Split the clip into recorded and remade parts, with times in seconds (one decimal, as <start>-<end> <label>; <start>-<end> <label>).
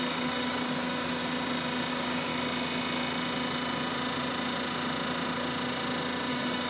0.0-1.2 remade; 1.2-1.9 recorded; 1.9-2.3 remade; 2.3-6.3 recorded; 6.3-6.7 remade